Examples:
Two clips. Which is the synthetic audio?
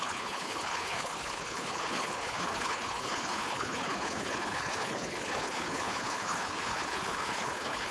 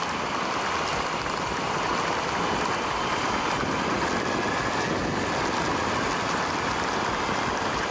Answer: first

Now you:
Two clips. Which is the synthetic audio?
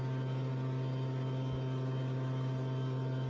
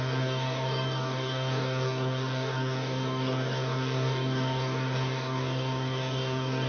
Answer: second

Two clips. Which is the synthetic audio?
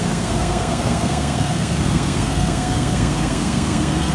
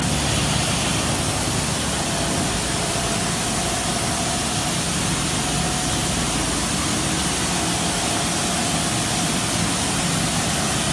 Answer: first